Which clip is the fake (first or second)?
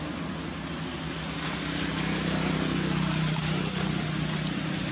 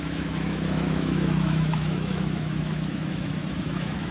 second